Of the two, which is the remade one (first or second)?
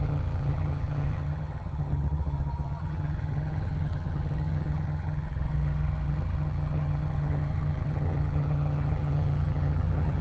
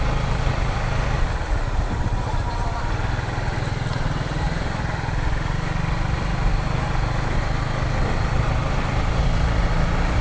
first